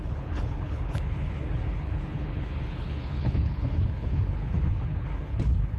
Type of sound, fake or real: fake